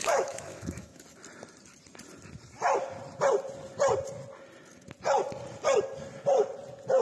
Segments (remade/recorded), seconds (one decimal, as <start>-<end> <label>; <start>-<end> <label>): 0.0-1.0 remade; 1.0-7.0 recorded